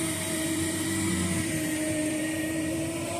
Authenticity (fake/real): fake